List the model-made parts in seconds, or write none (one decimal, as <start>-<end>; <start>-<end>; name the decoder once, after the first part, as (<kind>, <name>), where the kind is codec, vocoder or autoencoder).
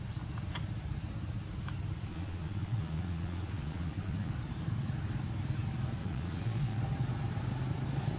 2.1-4.3 (vocoder, Vocos); 6.0-6.8